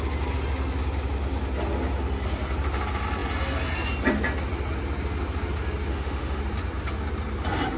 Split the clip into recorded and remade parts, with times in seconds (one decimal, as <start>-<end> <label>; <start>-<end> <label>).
0.0-5.9 recorded; 5.9-6.4 remade; 6.4-7.8 recorded